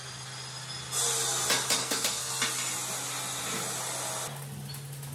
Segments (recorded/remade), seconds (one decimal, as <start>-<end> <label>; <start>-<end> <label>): 0.0-1.8 recorded; 1.8-2.3 remade; 2.3-5.1 recorded